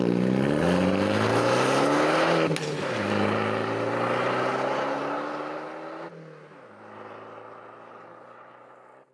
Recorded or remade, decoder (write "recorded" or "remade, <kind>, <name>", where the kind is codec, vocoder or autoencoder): recorded